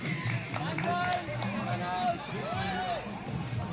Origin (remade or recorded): recorded